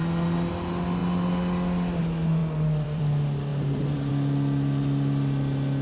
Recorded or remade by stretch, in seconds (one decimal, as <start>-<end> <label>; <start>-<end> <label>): 0.0-2.4 recorded; 2.4-3.0 remade; 3.0-5.8 recorded